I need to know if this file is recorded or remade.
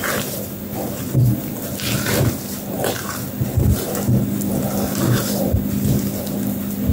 recorded